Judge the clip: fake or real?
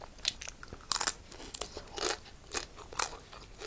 real